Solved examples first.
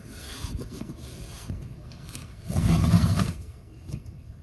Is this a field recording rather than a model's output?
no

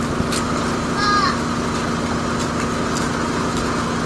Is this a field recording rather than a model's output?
yes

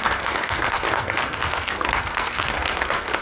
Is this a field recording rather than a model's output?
no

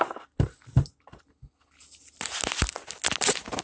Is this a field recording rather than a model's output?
yes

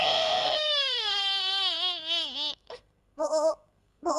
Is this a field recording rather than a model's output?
no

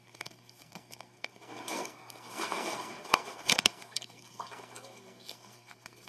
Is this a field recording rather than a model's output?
no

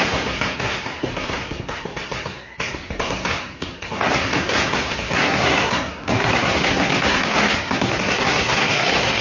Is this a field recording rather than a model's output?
no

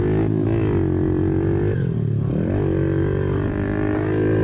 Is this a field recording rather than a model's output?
yes